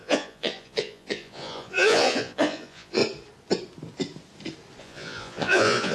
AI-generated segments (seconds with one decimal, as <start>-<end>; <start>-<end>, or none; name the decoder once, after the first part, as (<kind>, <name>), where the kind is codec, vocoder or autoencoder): 0.0-3.0 (vocoder, Vocos); 4.8-5.9

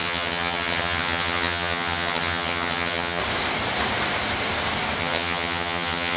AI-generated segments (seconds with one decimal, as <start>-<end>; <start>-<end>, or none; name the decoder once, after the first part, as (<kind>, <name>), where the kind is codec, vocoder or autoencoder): 0.0-3.2 (vocoder, HiFi-GAN); 5.0-6.2

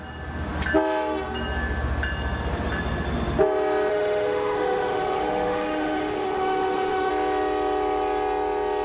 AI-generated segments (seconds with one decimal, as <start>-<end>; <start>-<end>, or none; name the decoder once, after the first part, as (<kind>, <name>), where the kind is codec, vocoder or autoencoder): 3.9-7.1 (autoencoder, DAC-VAE)

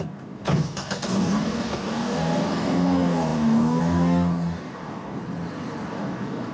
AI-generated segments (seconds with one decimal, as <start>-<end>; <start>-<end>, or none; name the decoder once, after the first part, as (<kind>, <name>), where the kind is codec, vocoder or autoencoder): 0.0-5.2 (codec, DAC); 5.9-6.5